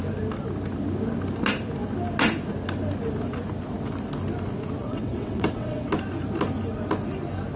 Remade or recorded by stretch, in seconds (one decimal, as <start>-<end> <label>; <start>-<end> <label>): 0.0-4.8 recorded; 4.8-5.9 remade; 5.9-7.6 recorded